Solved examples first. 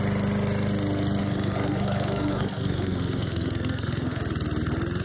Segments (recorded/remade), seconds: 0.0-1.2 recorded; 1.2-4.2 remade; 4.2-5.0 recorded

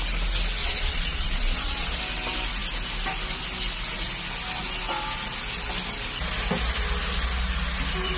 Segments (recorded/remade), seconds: 0.0-0.6 recorded; 0.6-2.0 remade; 2.0-8.2 recorded

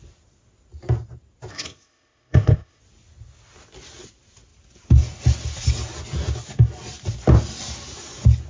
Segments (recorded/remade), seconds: 0.0-1.5 recorded; 1.5-2.8 remade; 2.8-8.5 recorded